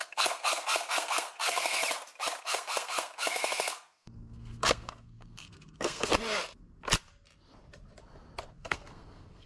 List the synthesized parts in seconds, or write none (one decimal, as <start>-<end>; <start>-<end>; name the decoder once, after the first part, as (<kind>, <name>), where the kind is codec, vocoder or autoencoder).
0.0-1.8 (codec, SNAC); 2.4-6.1; 8.5-9.5